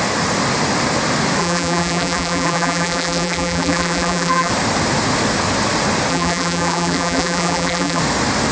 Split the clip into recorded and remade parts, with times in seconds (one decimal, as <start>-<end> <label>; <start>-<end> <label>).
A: 0.0-1.4 recorded; 1.4-4.5 remade; 4.5-6.1 recorded; 6.1-8.0 remade; 8.0-8.5 recorded